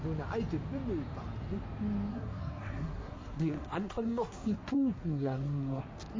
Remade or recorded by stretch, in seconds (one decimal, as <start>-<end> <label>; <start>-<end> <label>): 0.0-2.1 recorded; 2.1-5.8 remade; 5.8-6.2 recorded